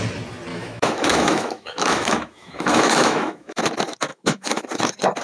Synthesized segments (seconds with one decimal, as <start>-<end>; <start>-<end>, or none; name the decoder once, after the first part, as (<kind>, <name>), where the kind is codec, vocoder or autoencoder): 0.5-3.6 (autoencoder, DAC-VAE); 4.1-4.6